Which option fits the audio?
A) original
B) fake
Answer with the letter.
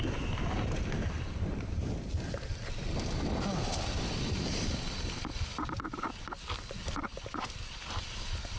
A